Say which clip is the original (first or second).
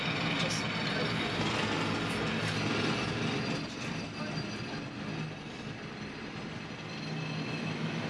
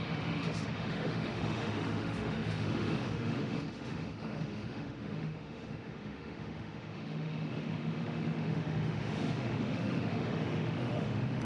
first